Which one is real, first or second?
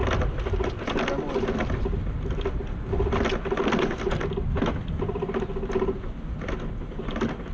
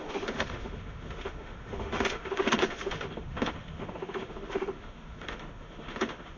first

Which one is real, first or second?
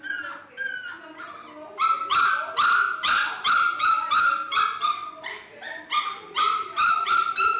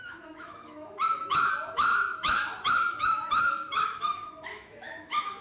first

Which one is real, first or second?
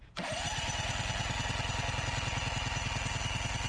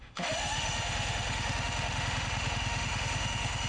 first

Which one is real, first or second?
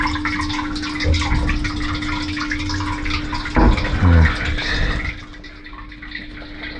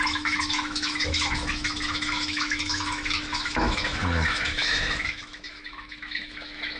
first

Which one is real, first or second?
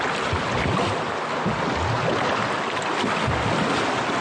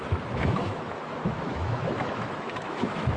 first